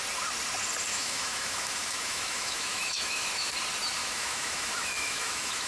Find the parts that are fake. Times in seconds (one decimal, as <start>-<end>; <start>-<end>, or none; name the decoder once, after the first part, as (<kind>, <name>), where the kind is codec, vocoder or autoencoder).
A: 0.9-3.5 (autoencoder, DAC-VAE); 4.0-5.7